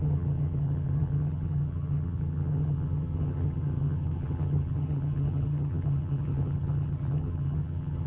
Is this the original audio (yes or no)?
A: no